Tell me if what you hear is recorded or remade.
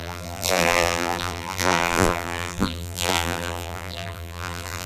remade